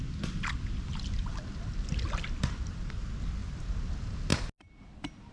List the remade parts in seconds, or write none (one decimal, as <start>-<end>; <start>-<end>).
none